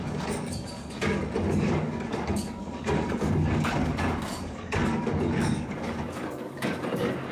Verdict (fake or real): fake